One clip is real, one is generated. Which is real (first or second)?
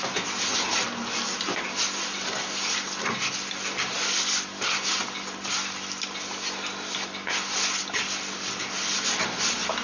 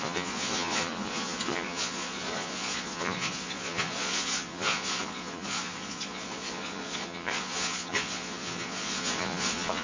first